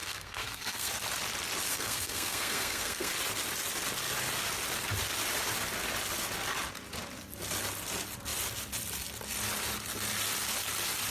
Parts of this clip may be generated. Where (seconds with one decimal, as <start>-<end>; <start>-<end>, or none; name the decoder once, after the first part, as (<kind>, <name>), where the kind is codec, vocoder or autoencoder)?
0.0-0.9 (codec, SNAC); 1.7-3.1